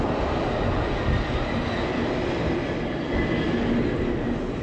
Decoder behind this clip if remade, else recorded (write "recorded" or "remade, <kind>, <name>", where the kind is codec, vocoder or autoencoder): recorded